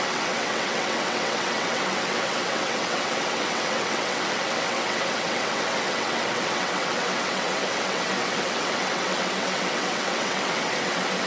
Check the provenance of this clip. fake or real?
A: fake